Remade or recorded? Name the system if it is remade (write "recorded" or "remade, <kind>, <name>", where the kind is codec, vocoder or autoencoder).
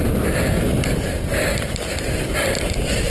recorded